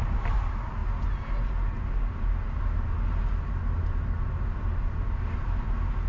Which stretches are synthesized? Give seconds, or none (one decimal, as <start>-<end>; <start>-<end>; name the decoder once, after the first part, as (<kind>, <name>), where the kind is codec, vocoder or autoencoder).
none